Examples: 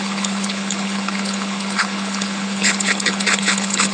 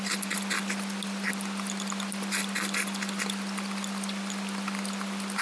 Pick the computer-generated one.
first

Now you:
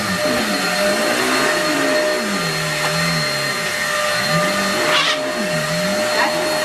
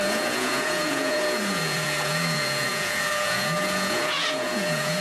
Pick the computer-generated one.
second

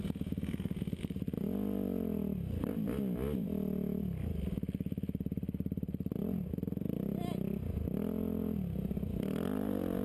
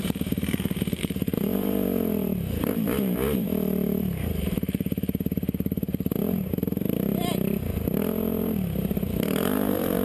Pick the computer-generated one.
second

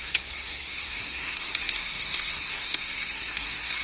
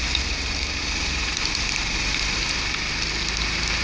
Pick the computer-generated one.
first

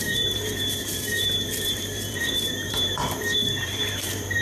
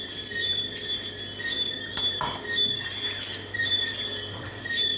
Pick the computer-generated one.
first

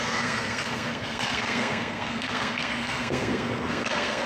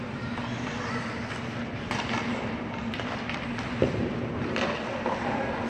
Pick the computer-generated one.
first